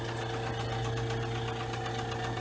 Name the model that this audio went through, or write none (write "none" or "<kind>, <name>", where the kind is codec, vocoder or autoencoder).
none